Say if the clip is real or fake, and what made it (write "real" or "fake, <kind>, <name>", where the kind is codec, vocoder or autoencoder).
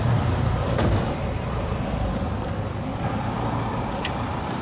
fake, vocoder, BigVGAN v2